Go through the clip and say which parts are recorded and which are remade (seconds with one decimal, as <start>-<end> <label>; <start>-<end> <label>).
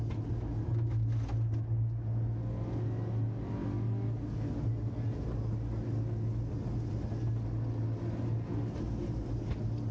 0.0-9.9 recorded